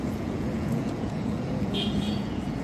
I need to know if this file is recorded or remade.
remade